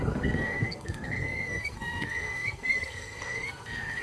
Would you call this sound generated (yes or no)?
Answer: yes